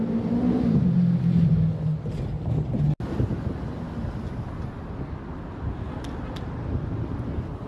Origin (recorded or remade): recorded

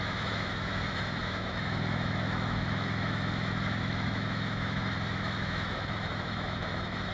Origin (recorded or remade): remade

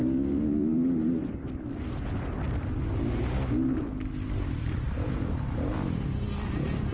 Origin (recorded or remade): recorded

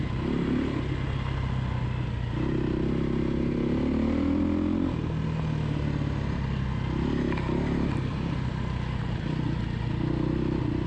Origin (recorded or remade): recorded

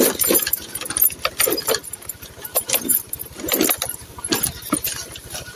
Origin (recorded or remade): recorded